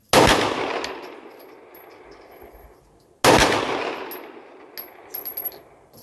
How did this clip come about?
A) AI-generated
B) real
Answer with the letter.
B